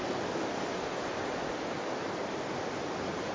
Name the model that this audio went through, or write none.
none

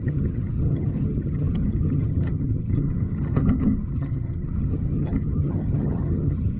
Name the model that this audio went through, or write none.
vocoder, HiFi-GAN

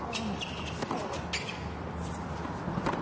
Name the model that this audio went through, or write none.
none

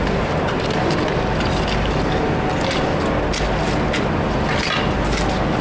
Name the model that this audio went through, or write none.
none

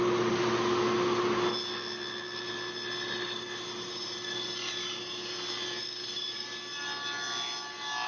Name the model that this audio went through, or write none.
none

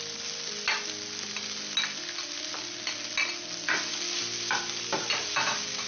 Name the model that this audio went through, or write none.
none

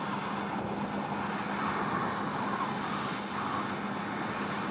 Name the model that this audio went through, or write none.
none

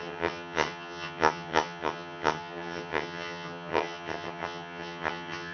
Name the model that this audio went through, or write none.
vocoder, HiFi-GAN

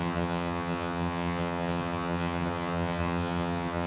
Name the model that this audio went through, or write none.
vocoder, HiFi-GAN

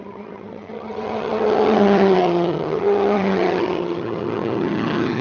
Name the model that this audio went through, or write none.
vocoder, HiFi-GAN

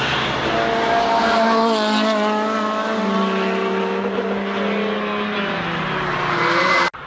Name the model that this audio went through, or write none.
none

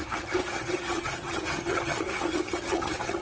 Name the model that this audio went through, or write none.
vocoder, HiFi-GAN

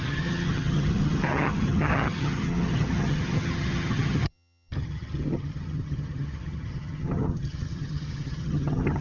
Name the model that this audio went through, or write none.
vocoder, HiFi-GAN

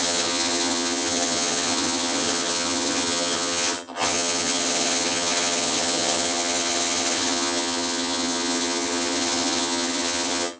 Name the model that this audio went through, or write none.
vocoder, HiFi-GAN